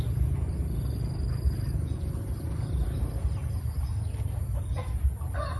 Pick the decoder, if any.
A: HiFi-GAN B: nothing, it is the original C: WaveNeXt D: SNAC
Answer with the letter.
B